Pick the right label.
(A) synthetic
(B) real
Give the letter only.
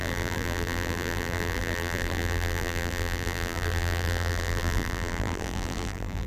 A